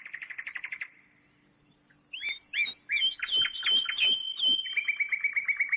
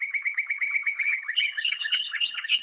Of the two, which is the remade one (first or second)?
second